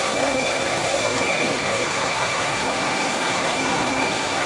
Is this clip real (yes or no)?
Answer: no